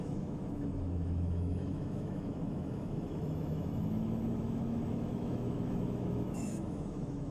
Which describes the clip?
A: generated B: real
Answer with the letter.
A